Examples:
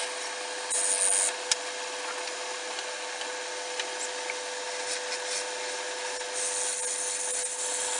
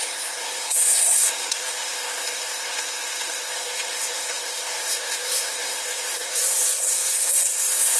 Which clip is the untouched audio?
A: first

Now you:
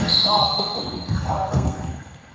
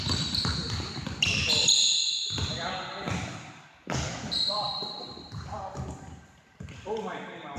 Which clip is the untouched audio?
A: second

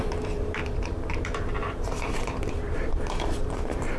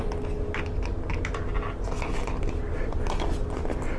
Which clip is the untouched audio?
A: second